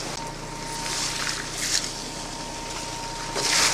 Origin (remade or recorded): recorded